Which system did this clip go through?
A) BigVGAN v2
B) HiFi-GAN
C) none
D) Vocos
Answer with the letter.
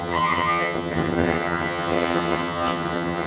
B